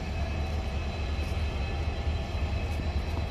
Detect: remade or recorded recorded